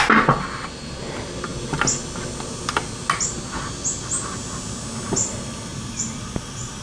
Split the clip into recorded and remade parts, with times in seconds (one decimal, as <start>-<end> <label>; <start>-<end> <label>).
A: 0.0-6.8 recorded

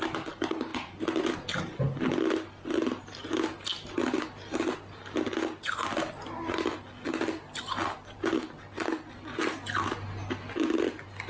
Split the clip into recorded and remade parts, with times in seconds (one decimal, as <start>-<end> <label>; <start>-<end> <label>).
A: 0.0-11.3 recorded

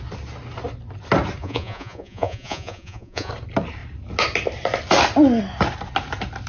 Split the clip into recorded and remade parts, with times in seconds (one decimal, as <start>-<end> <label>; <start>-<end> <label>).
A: 0.0-1.4 recorded; 1.4-3.3 remade; 3.3-6.5 recorded

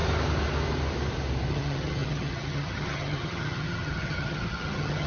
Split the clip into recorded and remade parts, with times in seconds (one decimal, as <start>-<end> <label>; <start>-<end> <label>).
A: 0.0-1.5 recorded; 1.5-5.1 remade

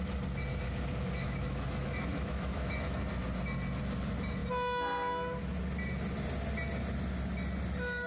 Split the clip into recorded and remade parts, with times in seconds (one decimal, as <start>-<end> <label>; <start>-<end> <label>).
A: 0.0-1.2 recorded; 1.2-3.0 remade; 3.0-8.1 recorded

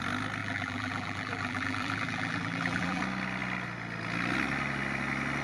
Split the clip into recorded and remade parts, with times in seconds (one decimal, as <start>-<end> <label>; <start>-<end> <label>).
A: 0.0-0.4 recorded; 0.4-3.0 remade; 3.0-5.4 recorded

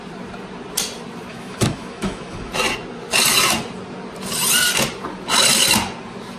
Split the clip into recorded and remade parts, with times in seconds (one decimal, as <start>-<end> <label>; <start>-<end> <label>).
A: 0.0-1.3 recorded; 1.3-2.5 remade; 2.5-6.4 recorded